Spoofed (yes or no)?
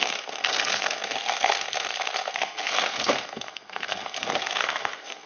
yes